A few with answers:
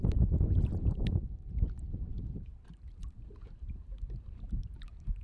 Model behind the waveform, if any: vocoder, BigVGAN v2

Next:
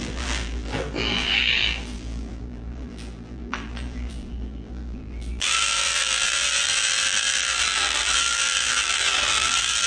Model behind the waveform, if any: vocoder, BigVGAN v2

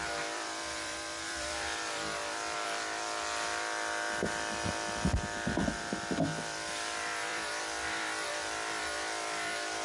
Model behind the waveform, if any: vocoder, BigVGAN v2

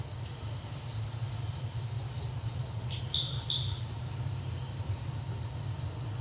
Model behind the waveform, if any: none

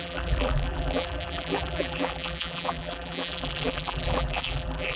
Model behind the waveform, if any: vocoder, BigVGAN v2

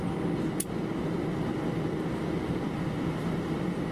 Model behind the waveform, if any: none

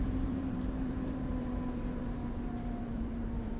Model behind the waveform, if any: vocoder, BigVGAN v2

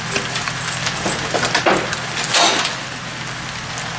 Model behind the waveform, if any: none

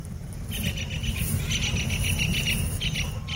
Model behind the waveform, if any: none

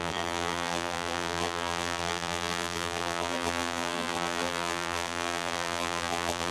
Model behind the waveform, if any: vocoder, BigVGAN v2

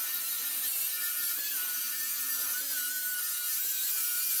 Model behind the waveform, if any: none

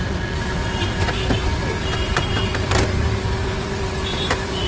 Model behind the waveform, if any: none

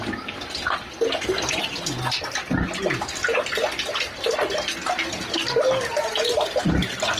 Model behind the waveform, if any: vocoder, BigVGAN v2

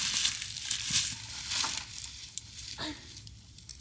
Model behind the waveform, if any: none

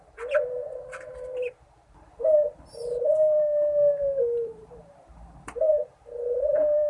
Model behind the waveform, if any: vocoder, BigVGAN v2